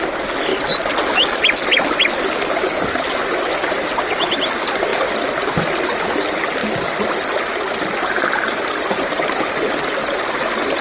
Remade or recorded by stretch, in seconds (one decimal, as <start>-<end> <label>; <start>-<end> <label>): 0.0-10.8 recorded